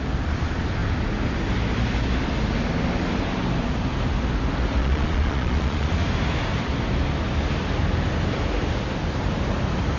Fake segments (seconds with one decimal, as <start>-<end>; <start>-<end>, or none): 4.8-5.9

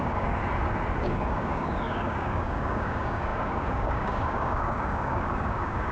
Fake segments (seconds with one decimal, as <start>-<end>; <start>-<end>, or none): 0.0-0.4; 1.0-5.9

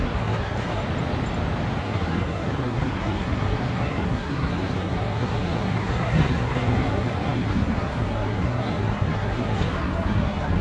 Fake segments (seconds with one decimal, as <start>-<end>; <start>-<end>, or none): 0.0-0.8; 1.8-10.6

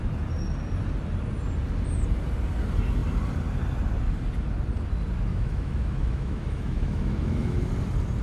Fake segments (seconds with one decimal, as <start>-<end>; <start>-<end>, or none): 5.3-7.7